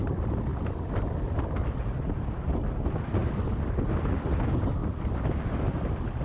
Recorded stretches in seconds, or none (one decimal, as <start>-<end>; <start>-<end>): 0.0-6.2